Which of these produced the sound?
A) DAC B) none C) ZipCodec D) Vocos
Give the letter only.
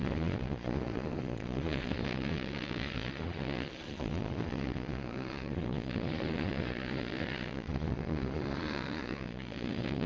D